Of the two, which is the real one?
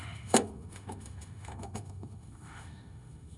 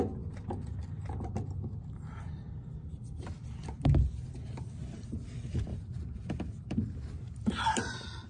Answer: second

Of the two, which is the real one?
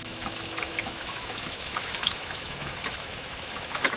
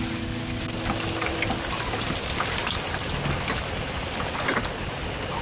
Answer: second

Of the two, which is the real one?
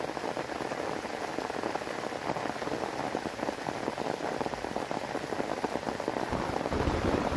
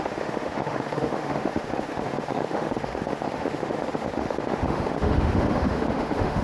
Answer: first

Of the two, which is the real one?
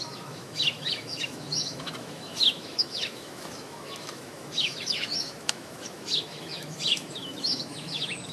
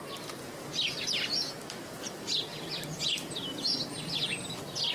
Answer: second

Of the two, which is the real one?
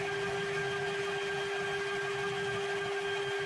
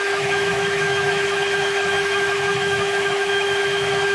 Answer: first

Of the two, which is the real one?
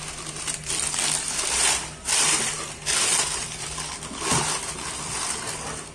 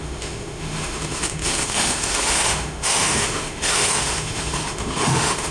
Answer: first